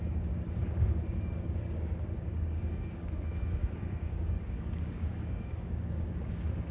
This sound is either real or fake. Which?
fake